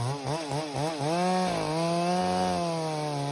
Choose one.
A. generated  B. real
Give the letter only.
B